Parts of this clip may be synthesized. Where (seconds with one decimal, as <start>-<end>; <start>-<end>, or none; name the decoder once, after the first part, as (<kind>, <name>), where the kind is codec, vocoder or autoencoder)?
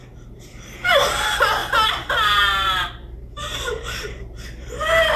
0.0-1.1 (vocoder, BigVGAN v2); 1.6-4.7